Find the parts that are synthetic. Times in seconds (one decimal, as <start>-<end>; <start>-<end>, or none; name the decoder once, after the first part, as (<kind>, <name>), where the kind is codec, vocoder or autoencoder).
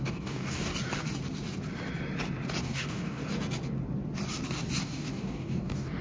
0.0-0.7 (codec, DAC); 2.6-3.2; 4.8-6.0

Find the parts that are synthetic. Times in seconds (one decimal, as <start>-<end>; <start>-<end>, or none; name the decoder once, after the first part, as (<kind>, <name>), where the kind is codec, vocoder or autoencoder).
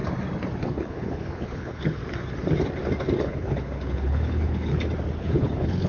0.6-2.0 (codec, HILCodec); 3.2-4.7; 5.2-5.9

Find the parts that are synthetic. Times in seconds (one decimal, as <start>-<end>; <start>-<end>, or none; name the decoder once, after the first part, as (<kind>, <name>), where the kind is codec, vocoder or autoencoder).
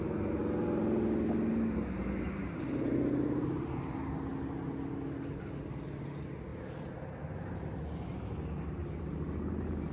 none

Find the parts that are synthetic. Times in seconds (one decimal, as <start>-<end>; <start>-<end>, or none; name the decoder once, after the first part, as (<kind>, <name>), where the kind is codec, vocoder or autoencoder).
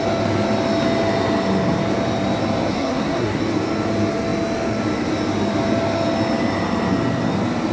2.7-3.4 (codec, SNAC)